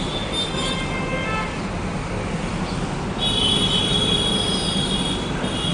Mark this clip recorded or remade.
recorded